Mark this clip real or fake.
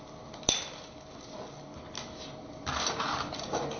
real